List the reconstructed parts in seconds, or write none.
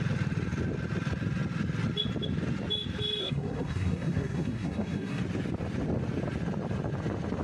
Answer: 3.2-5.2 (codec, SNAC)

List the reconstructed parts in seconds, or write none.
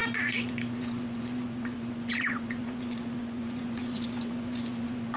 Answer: 0.0-5.2 (vocoder, Vocos)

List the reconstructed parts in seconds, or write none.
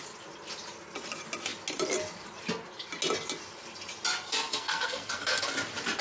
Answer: 4.5-5.5 (codec, SNAC)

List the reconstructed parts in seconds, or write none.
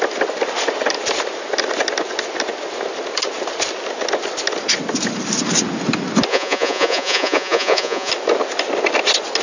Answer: 6.3-8.1 (vocoder, Vocos)